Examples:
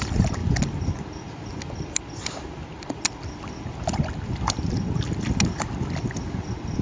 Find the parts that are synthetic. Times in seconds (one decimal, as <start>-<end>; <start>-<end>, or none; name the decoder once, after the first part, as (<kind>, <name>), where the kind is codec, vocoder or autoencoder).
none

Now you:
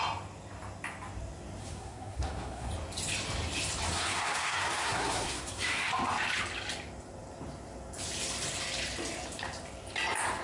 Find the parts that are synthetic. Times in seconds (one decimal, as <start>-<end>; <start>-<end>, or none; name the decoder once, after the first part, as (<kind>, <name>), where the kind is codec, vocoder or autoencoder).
1.6-2.7 (codec, SNAC); 3.9-5.9

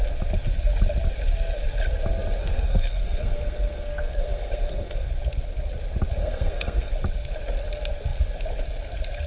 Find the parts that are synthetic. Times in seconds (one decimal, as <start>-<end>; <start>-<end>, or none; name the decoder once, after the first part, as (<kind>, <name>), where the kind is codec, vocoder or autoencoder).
2.4-5.1 (codec, SNAC); 6.2-6.9

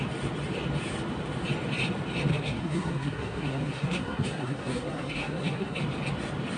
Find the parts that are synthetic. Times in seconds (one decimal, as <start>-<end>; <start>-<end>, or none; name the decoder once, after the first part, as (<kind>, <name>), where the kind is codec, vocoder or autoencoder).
2.3-5.8 (codec, SNAC)